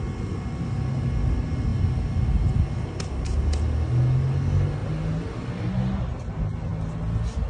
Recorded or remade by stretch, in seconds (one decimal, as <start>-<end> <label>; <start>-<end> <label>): 0.0-4.8 recorded; 4.8-5.7 remade; 5.7-7.5 recorded